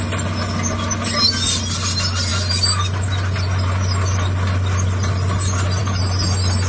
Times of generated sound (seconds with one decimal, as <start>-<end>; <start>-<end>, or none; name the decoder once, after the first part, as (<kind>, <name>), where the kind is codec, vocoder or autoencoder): none